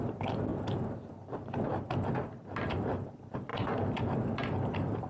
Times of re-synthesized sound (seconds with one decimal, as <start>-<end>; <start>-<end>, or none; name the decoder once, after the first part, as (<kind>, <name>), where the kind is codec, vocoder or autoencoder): 0.0-1.7 (vocoder, BigVGAN v2); 2.7-3.5; 4.0-5.1